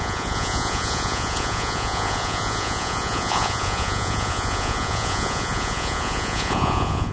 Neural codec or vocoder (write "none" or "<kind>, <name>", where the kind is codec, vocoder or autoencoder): vocoder, Vocos